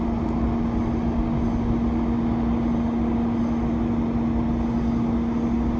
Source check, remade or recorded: recorded